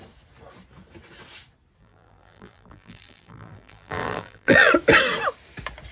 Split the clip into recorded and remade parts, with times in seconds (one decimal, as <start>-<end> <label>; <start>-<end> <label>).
0.0-1.8 recorded; 1.8-4.7 remade; 4.7-5.9 recorded